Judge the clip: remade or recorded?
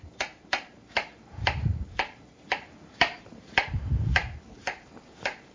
remade